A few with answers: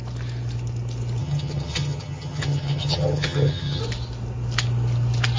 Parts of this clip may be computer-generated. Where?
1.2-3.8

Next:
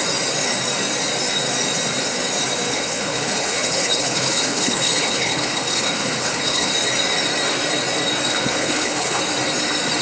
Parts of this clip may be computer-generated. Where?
2.7-6.7; 8.3-9.2

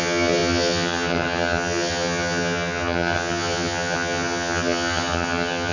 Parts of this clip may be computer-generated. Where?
0.0-5.7

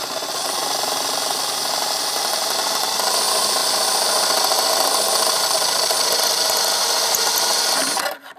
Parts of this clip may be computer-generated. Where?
none

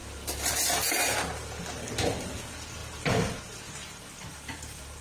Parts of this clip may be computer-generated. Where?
4.3-5.0